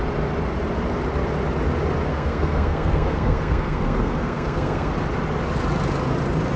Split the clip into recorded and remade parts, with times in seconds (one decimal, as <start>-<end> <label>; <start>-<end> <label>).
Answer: 0.0-2.1 recorded; 2.1-4.9 remade; 4.9-6.6 recorded